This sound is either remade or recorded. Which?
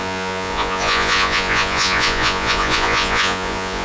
remade